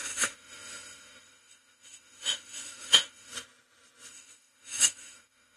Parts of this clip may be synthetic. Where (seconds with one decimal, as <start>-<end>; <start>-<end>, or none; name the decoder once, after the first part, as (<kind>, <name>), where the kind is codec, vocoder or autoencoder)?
0.0-3.3 (autoencoder, DAC-VAE); 4.1-5.6